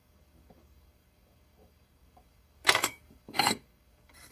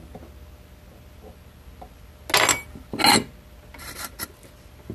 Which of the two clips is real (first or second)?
second